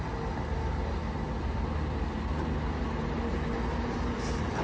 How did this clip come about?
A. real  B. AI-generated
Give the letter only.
A